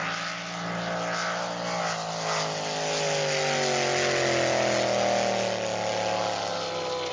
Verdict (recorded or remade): recorded